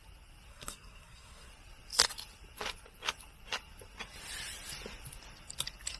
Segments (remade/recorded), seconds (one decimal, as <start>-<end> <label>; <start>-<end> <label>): 0.0-0.5 recorded; 0.5-1.5 remade; 1.5-6.0 recorded